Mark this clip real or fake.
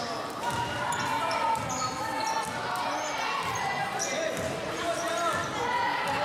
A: real